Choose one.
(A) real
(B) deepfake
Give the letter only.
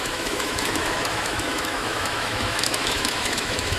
B